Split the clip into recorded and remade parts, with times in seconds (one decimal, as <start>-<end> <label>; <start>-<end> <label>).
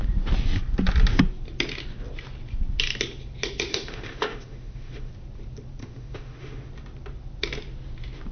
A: 0.0-3.7 recorded; 3.7-5.1 remade; 5.1-5.8 recorded; 5.8-6.7 remade; 6.7-8.3 recorded